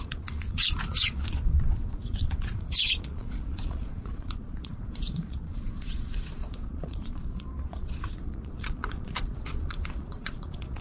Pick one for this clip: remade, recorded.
remade